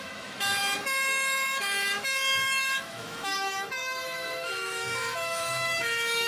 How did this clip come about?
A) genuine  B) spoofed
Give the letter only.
B